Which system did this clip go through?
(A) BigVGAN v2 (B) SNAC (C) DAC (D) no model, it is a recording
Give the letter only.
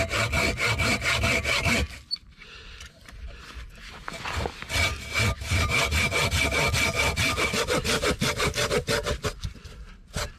D